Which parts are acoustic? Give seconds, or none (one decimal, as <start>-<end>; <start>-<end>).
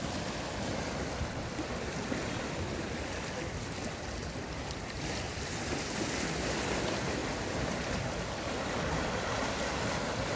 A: 7.2-8.9